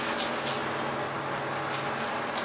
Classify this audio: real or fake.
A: real